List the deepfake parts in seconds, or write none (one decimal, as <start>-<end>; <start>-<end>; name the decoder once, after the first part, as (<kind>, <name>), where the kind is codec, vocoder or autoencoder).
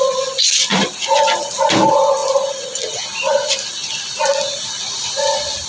none